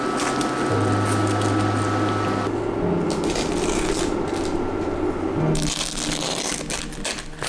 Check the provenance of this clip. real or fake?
real